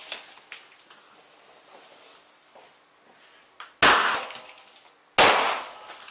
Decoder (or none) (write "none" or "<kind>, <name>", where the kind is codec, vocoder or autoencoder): none